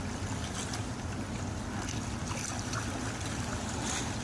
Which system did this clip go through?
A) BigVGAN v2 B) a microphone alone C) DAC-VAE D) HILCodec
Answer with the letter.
B